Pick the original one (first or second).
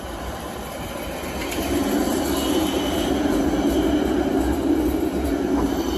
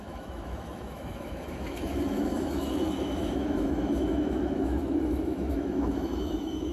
first